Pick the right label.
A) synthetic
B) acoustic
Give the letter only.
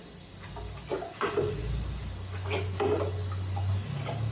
B